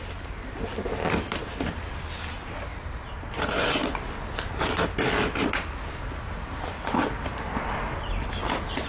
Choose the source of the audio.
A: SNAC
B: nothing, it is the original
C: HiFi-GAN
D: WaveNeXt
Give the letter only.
B